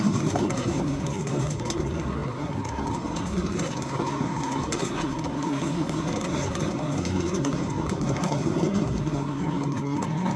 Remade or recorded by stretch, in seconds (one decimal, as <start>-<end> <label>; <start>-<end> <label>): 0.0-10.4 remade

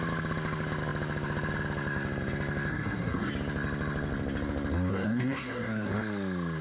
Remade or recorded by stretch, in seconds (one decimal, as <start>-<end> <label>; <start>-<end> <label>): 0.0-2.7 recorded; 2.7-3.3 remade; 3.3-4.9 recorded; 4.9-5.9 remade; 5.9-6.6 recorded

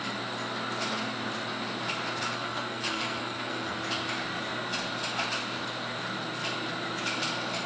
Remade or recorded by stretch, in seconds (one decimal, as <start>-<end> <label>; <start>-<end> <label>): 0.0-2.3 recorded; 2.3-3.8 remade; 3.8-7.7 recorded

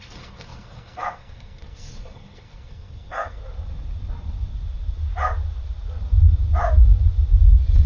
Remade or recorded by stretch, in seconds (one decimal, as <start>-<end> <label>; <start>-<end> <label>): 0.0-3.4 remade; 3.4-7.9 recorded

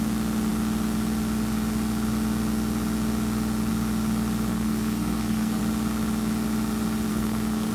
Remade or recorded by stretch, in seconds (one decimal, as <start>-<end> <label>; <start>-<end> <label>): 0.0-4.5 recorded; 4.5-5.6 remade; 5.6-7.1 recorded; 7.1-7.7 remade

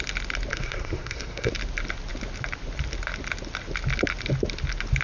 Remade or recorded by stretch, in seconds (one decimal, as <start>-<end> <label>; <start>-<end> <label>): 0.0-0.5 recorded; 0.5-1.5 remade; 1.5-5.0 recorded